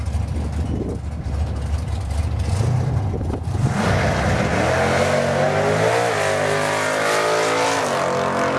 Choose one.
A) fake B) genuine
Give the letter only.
B